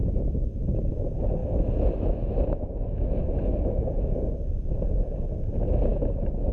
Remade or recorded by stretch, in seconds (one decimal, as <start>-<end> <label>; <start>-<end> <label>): 0.0-0.9 remade; 0.9-1.4 recorded; 1.4-4.2 remade; 4.2-5.9 recorded; 5.9-6.5 remade